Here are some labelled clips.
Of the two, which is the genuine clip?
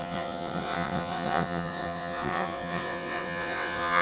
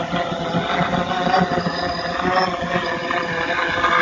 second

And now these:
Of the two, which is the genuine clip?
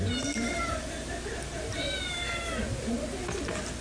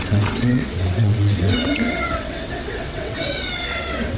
first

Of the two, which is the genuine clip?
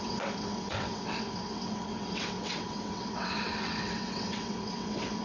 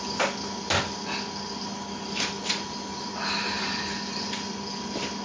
second